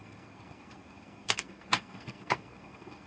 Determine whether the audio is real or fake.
fake